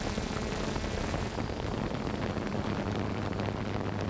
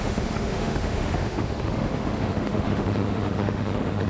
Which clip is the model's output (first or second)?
second